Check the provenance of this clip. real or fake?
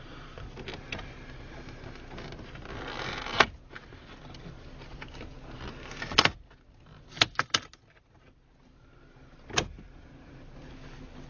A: real